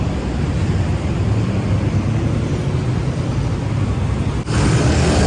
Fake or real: real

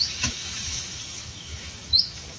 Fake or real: fake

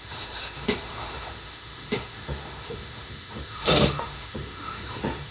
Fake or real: fake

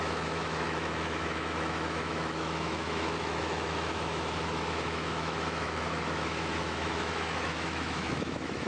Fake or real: fake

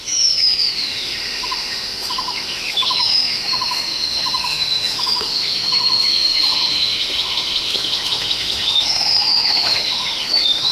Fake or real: fake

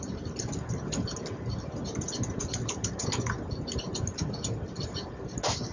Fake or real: real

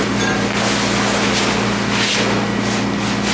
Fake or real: real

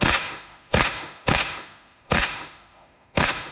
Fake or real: fake